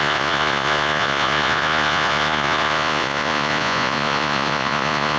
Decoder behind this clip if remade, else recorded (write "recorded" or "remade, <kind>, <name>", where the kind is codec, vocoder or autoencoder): remade, vocoder, Vocos